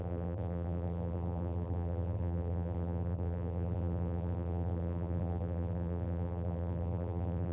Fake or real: fake